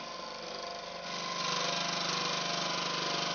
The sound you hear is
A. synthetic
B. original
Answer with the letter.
B